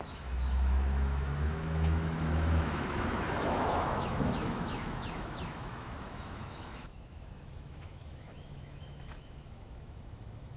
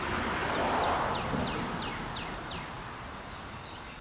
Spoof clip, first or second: first